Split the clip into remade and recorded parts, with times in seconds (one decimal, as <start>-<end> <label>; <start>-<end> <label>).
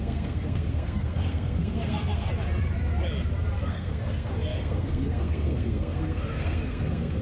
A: 0.0-2.3 remade; 2.3-3.6 recorded; 3.6-7.2 remade